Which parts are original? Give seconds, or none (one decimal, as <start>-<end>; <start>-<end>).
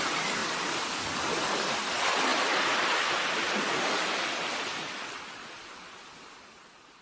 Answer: 0.0-7.0